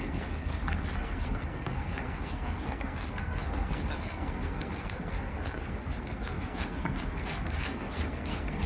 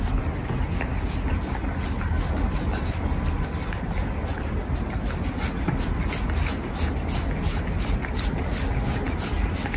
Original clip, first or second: second